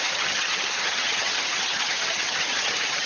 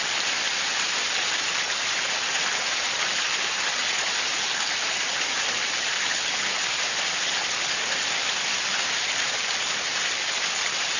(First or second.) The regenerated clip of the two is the first